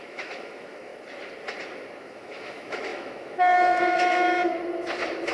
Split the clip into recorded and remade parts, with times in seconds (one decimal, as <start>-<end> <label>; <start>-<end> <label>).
0.0-0.9 remade; 0.9-2.0 recorded; 2.0-4.4 remade; 4.4-5.3 recorded